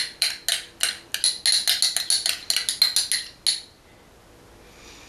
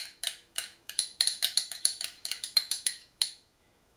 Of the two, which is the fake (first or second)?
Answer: second